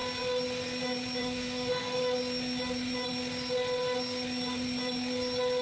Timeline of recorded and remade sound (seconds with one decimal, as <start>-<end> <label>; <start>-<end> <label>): 0.0-1.2 recorded; 1.2-2.0 remade; 2.0-5.6 recorded